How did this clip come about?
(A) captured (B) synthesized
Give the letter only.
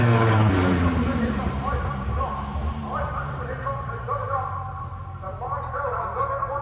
B